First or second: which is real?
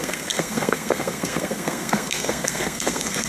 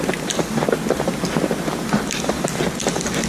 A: second